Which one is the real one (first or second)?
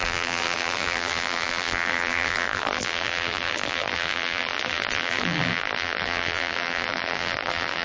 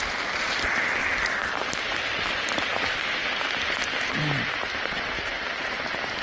second